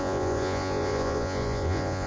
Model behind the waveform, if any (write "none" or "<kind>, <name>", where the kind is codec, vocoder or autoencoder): vocoder, Vocos